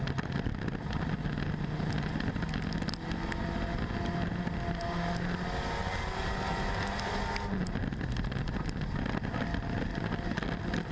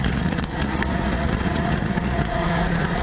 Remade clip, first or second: second